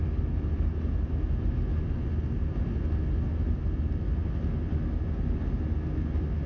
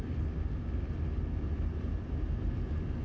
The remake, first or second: second